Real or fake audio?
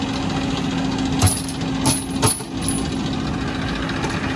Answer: real